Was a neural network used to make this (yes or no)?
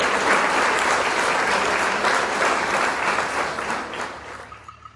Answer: yes